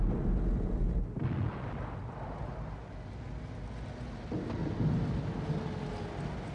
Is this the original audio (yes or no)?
yes